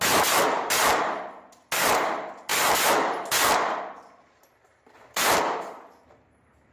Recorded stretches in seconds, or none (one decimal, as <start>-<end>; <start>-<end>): 0.0-6.7